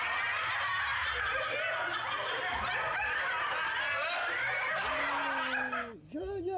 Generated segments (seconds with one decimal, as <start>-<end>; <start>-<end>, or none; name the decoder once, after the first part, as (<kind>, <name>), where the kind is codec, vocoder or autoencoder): 0.9-1.7 (vocoder, BigVGAN v2)